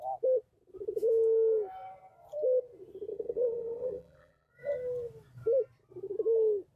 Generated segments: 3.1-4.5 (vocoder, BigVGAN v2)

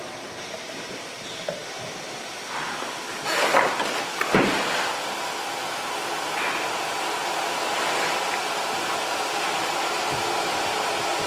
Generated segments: none

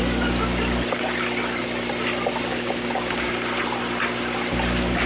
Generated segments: 2.5-3.3 (codec, DAC)